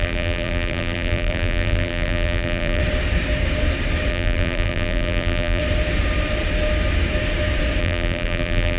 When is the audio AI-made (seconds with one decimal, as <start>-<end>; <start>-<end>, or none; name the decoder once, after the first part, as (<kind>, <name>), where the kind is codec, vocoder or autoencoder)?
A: 0.0-2.8 (vocoder, BigVGAN v2); 4.1-5.6; 7.8-8.8